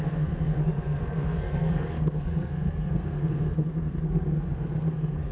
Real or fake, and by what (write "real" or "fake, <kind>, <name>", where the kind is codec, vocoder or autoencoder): fake, codec, SNAC